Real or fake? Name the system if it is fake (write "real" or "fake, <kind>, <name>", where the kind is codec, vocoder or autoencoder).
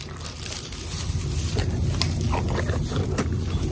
real